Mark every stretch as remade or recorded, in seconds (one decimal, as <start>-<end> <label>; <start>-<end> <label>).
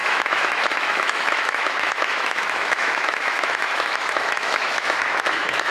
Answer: 0.0-5.7 remade